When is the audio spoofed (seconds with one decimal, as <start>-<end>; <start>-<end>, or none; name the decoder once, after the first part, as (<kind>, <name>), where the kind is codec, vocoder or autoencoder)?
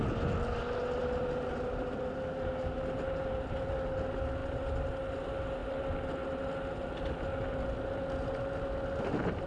none